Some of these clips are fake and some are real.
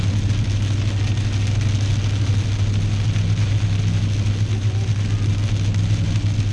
real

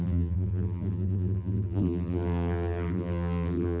fake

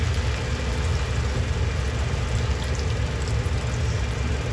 real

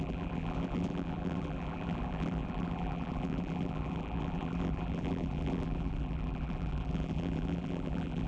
fake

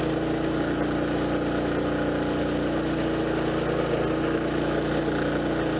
real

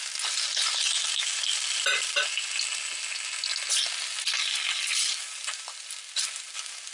real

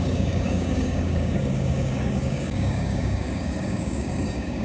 fake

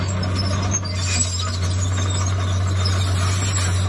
real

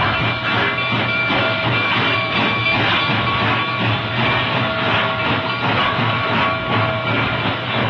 real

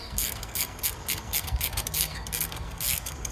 fake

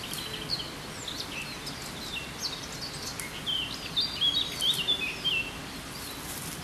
real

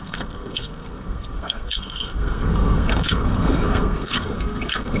fake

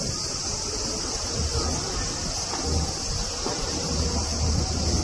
real